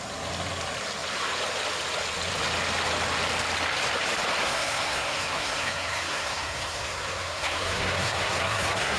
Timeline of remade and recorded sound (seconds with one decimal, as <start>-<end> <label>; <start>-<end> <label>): 0.0-4.4 recorded; 4.4-9.0 remade